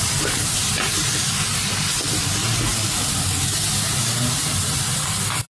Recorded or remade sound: recorded